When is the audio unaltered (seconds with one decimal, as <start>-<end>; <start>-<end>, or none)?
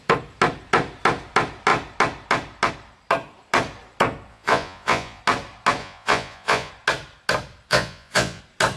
0.0-4.3; 5.2-5.8; 6.7-7.7; 8.4-8.8